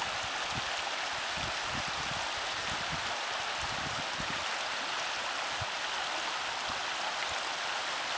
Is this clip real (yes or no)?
yes